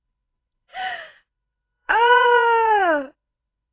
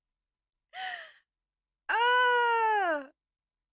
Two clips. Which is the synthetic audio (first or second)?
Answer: first